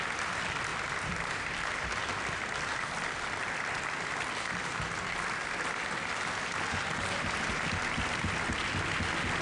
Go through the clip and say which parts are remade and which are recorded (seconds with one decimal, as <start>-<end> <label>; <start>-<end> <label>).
0.0-0.7 recorded; 0.7-1.9 remade; 1.9-9.4 recorded